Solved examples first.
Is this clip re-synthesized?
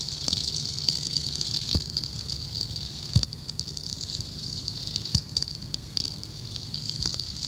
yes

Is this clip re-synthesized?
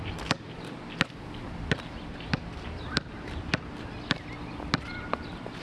no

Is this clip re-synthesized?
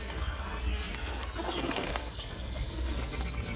yes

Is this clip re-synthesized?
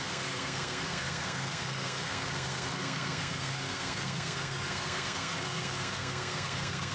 yes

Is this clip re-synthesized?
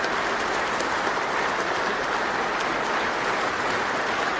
no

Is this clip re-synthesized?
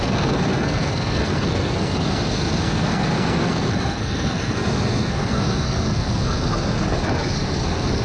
yes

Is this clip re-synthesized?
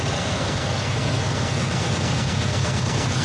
yes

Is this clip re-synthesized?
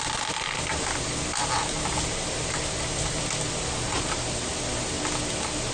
no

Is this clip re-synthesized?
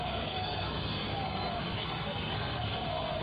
yes